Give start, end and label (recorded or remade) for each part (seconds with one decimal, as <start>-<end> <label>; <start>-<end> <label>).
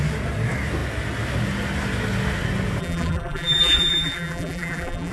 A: 0.0-2.8 recorded; 2.8-5.1 remade